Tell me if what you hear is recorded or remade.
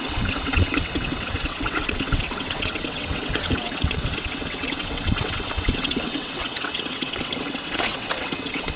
remade